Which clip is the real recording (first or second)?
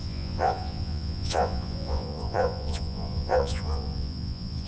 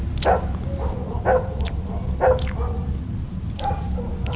second